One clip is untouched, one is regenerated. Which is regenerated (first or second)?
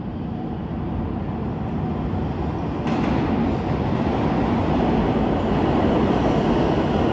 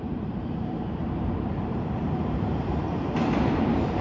second